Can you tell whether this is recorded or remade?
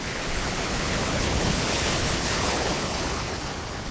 remade